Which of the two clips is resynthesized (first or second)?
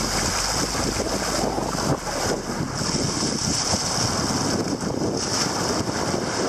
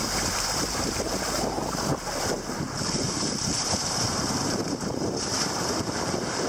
second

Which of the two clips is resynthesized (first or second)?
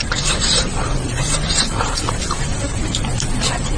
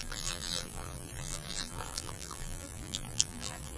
second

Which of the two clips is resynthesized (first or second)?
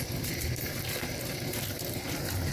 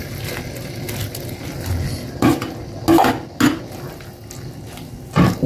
first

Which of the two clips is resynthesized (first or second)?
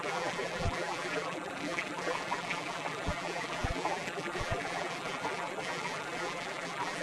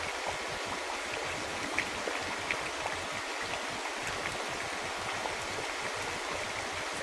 first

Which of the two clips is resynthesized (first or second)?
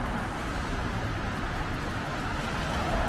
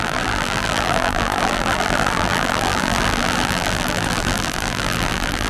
second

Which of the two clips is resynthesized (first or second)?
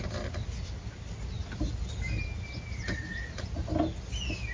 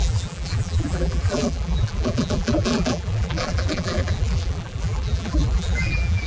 second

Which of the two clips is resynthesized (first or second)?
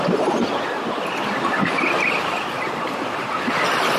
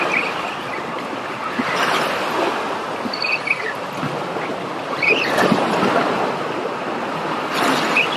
first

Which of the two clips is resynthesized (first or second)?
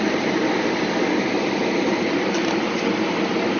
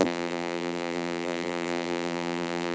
second